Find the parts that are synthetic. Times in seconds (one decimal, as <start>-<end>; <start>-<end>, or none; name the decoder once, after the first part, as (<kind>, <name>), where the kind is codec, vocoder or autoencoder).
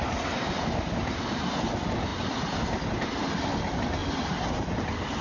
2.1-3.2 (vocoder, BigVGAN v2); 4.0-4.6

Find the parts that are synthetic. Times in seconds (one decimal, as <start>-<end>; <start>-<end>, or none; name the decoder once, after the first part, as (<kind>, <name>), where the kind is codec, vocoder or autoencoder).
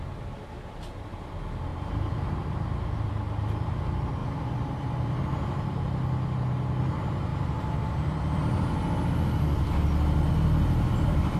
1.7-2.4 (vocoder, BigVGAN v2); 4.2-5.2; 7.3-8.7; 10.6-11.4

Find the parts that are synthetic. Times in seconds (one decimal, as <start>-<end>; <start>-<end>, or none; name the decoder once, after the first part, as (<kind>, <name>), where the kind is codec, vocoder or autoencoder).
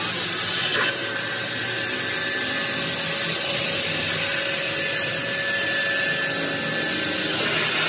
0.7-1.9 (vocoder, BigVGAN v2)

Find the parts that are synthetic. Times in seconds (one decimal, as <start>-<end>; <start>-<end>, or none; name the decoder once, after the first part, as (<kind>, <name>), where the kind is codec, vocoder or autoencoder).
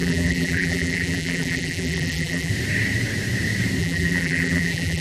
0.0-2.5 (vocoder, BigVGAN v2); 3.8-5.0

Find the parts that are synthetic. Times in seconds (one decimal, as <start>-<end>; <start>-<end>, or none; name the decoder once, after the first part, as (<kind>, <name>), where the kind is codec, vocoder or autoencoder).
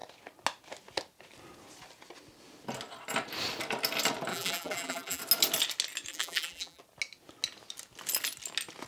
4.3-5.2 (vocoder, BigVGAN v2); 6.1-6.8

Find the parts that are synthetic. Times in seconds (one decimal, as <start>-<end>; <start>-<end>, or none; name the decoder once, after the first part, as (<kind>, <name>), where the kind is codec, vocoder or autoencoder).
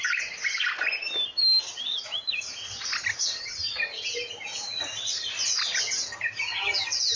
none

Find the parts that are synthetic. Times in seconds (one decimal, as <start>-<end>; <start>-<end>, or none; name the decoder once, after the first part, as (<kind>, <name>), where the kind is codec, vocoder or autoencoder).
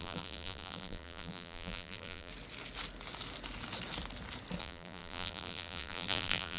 0.0-2.3 (vocoder, BigVGAN v2); 4.6-6.6